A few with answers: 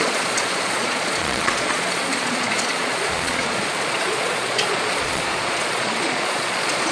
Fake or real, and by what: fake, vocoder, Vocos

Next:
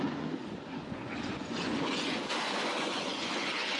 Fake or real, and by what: fake, vocoder, Vocos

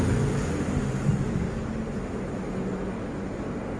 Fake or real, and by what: real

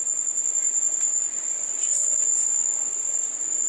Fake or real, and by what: real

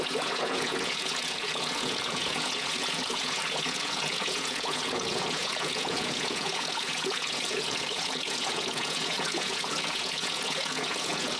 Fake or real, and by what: fake, vocoder, Vocos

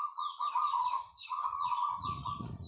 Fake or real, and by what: fake, vocoder, Vocos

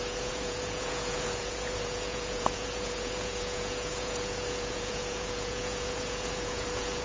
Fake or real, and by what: fake, vocoder, Vocos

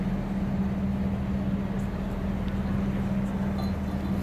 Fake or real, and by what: real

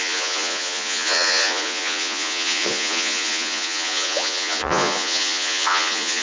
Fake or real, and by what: fake, vocoder, Vocos